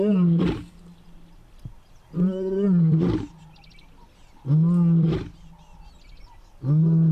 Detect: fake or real real